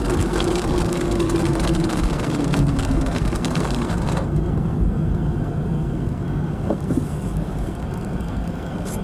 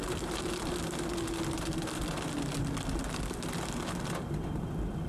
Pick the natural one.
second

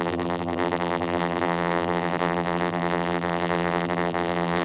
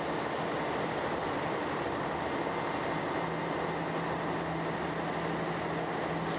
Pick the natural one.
second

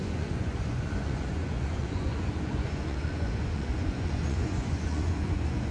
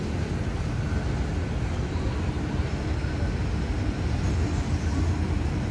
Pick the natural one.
second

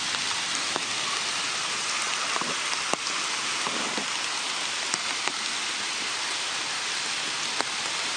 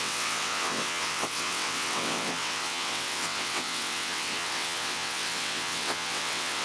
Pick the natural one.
first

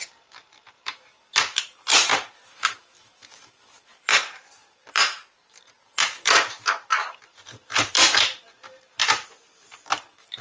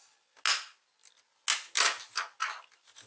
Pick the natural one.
second